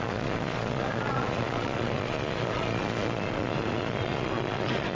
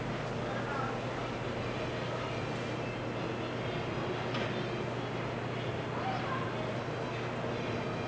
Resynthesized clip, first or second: first